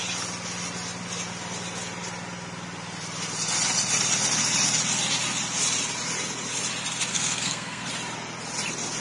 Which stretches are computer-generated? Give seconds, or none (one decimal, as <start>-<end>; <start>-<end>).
7.1-7.9